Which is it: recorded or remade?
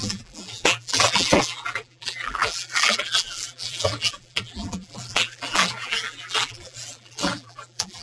remade